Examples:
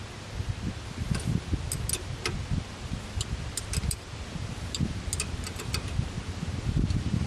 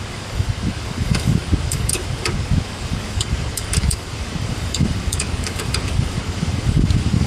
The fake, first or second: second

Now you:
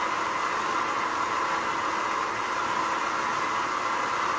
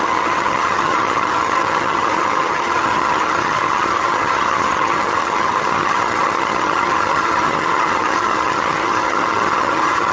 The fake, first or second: second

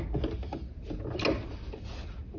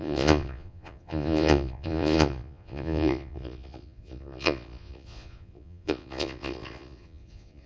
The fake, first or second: second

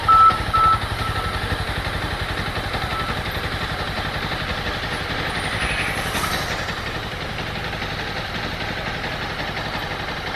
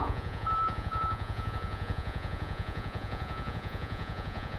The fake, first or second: second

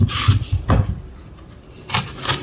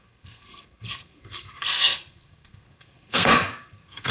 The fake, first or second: second